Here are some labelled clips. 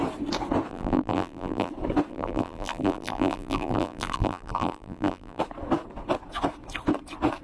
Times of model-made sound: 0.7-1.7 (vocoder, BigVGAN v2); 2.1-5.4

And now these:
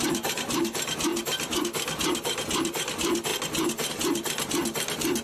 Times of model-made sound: 0.0-1.1 (vocoder, BigVGAN v2); 1.6-3.3; 3.9-5.2